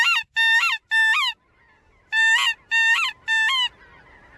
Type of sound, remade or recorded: recorded